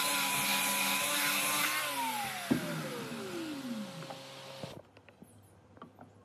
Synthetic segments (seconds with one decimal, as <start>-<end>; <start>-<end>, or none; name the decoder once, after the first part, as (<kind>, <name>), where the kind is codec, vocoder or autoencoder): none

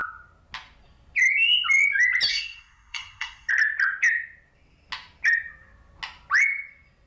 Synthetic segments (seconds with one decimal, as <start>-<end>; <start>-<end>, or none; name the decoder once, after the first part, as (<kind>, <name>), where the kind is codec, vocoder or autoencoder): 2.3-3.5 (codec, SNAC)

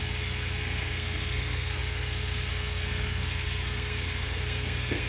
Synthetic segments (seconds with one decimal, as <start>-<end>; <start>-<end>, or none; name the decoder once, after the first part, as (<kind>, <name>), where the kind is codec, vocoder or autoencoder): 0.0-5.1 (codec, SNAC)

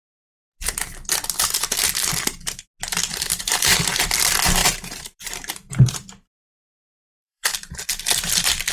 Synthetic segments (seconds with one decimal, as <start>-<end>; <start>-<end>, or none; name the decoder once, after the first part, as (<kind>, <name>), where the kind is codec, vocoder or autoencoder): 3.1-4.1 (vocoder, BigVGAN v2); 4.6-7.7

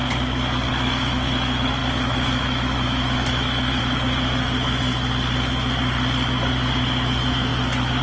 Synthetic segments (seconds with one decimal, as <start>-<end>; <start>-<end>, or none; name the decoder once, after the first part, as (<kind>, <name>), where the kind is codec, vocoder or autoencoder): 0.7-4.9 (autoencoder, DAC-VAE); 6.7-7.5

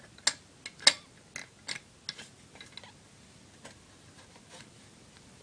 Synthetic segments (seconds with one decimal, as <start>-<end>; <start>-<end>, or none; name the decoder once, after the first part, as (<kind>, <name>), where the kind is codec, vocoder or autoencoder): none